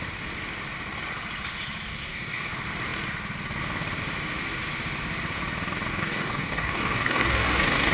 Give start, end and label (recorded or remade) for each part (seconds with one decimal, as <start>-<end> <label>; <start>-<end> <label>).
0.0-1.9 recorded; 1.9-2.5 remade; 2.5-5.9 recorded; 5.9-7.9 remade